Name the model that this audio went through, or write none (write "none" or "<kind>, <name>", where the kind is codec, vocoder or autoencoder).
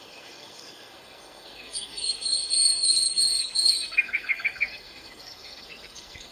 codec, SNAC